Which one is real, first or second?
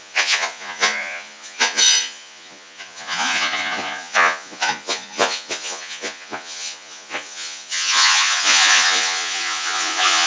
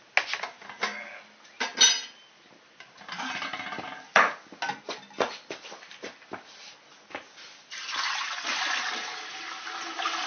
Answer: second